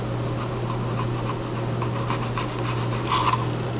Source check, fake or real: real